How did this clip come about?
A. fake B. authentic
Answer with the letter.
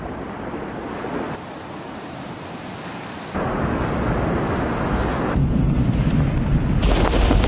B